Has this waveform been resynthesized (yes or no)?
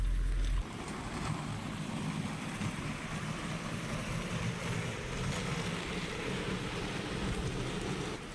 no